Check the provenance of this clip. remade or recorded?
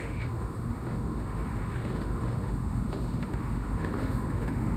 remade